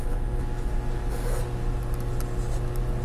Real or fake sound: real